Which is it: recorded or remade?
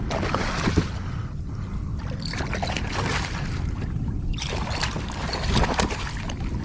recorded